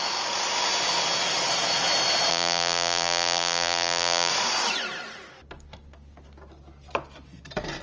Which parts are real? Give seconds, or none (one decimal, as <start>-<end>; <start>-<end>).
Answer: 0.0-2.3; 4.3-7.8